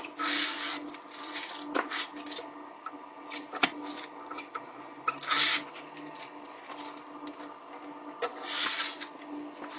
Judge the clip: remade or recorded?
recorded